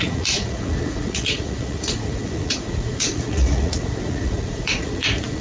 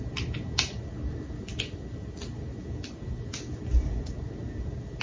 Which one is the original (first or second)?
second